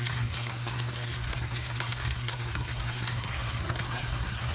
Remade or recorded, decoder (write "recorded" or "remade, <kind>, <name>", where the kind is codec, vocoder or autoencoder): remade, codec, SNAC